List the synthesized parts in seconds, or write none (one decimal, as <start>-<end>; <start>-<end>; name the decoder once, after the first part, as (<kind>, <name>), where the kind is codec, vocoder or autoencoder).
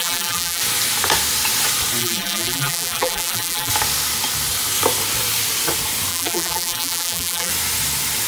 0.0-0.6 (vocoder, BigVGAN v2); 2.0-3.7; 6.1-7.5